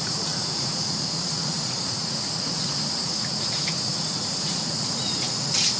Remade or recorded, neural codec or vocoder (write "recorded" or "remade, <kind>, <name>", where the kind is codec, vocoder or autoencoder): remade, vocoder, Vocos